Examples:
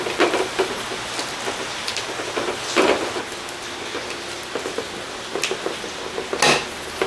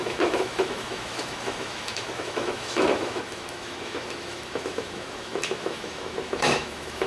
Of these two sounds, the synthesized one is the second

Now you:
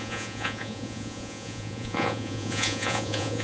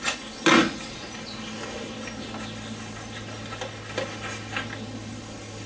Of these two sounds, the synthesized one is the first